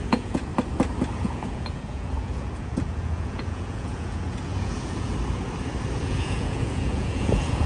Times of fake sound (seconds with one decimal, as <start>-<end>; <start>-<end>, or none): 0.0-0.5; 1.2-5.1; 6.0-7.7